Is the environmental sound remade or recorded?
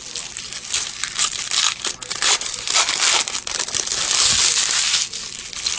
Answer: recorded